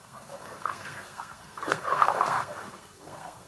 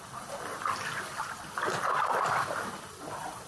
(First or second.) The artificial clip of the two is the first